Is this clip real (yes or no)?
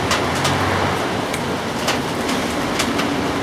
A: yes